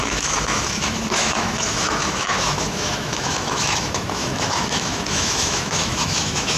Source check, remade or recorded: remade